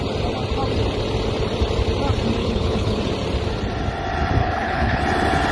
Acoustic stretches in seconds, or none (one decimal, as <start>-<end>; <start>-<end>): 0.0-2.4; 3.0-4.4; 5.0-5.5